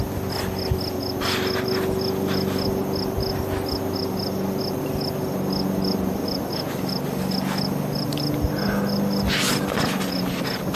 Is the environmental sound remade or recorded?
recorded